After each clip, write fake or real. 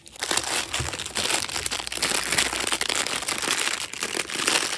real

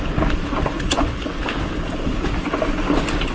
real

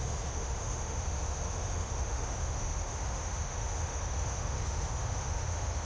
fake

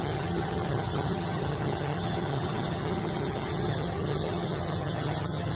fake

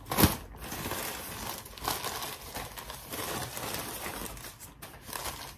real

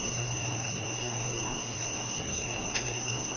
fake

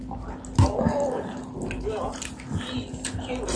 real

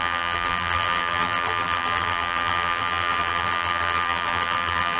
fake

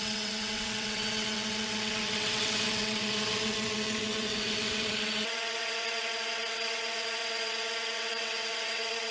fake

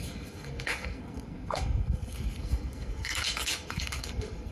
fake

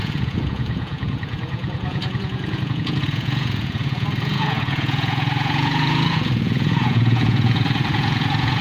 fake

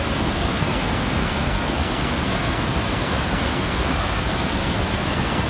fake